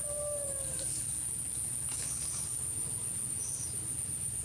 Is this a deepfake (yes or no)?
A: no